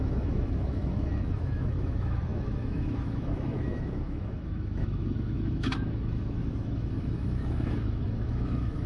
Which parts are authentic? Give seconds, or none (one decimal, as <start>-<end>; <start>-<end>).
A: none